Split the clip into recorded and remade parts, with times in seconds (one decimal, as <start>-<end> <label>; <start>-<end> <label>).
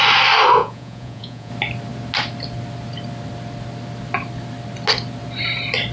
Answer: 0.0-0.6 recorded; 0.6-1.5 remade; 1.5-5.9 recorded